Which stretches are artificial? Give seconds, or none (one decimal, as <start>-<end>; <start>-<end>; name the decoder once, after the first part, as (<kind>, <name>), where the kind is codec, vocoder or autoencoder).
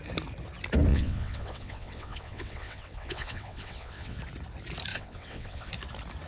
0.9-4.2 (vocoder, WaveNeXt); 4.9-5.7